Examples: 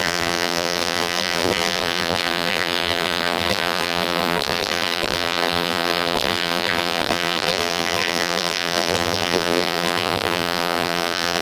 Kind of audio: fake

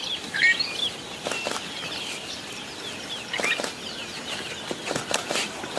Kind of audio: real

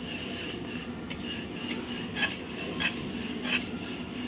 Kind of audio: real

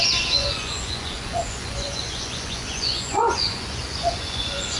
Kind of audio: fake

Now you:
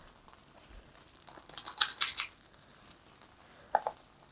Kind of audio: real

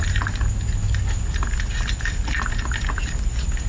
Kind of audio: real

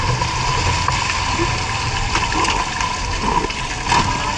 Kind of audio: real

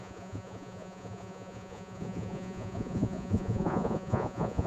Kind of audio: fake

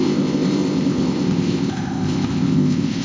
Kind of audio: fake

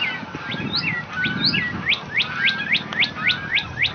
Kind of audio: real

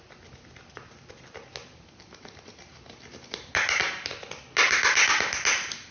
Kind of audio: real